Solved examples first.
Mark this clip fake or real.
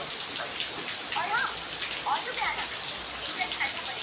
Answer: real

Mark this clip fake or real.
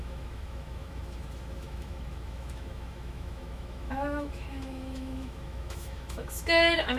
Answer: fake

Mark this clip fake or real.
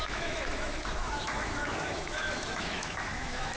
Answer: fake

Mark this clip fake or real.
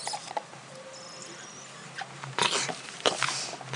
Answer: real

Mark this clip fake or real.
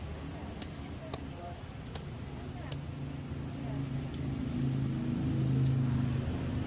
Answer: real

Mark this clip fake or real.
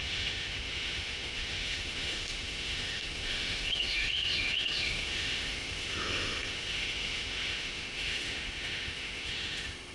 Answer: fake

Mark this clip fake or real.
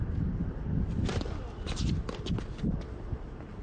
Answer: real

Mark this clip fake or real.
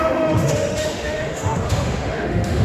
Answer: fake